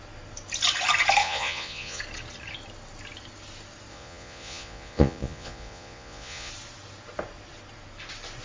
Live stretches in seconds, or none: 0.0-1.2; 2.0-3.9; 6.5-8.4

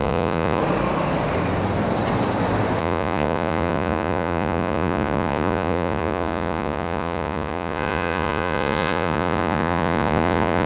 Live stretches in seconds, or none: 0.6-2.8

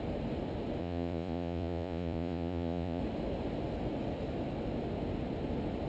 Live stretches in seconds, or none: 0.0-0.8; 3.0-5.9

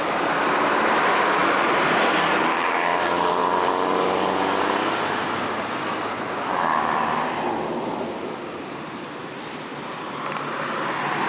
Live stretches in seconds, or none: 0.0-11.3

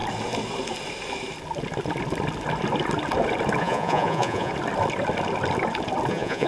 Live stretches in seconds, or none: 0.0-3.6; 4.5-6.1

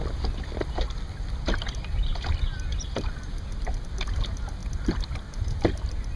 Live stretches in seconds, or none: 0.0-6.2

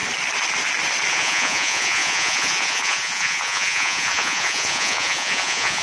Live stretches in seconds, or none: 0.0-1.1